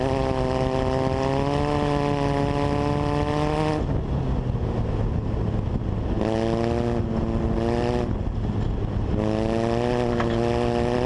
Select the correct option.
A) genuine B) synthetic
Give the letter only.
A